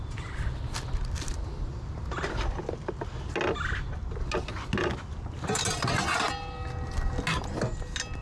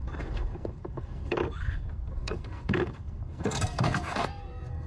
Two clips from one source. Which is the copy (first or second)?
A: second